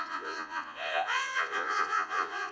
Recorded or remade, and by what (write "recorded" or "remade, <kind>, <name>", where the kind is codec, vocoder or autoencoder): remade, vocoder, Vocos